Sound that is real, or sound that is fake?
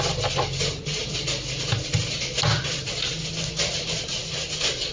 real